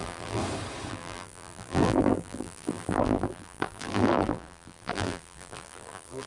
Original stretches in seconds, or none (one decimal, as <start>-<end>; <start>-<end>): 0.4-0.9